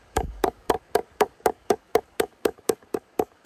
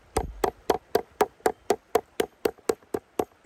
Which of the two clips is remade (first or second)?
first